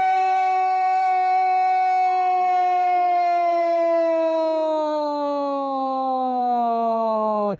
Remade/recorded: remade